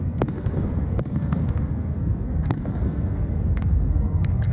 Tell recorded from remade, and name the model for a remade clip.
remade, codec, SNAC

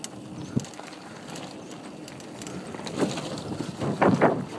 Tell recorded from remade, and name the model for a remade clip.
recorded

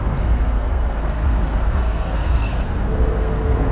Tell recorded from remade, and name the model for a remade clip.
remade, codec, SNAC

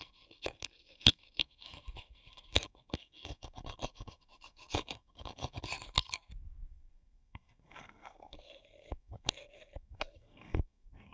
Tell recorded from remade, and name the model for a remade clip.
remade, codec, SNAC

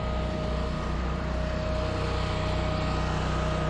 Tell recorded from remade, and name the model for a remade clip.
recorded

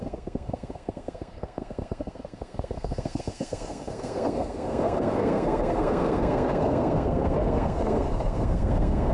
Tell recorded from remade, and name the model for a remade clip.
remade, codec, SNAC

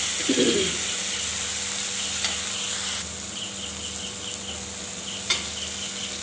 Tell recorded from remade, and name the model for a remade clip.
recorded